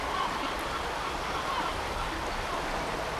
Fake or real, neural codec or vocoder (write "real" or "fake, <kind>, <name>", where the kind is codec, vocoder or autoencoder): real